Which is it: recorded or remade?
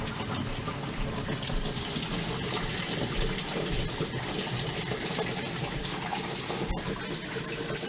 recorded